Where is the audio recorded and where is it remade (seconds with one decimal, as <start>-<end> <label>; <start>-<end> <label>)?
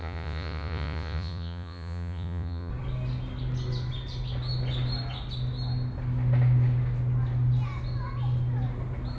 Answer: 0.0-2.7 remade; 2.7-9.2 recorded